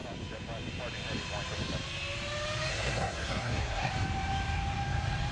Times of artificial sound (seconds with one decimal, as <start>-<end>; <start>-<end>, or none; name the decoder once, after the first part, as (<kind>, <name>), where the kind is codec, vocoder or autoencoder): 2.7-3.9 (codec, SNAC)